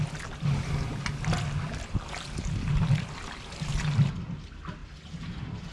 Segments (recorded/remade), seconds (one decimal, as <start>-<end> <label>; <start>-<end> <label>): 0.0-4.8 recorded; 4.8-5.7 remade